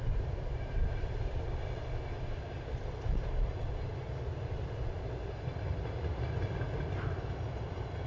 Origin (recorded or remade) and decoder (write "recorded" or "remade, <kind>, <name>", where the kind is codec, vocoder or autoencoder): recorded